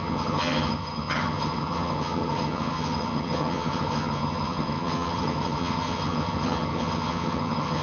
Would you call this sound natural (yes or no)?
no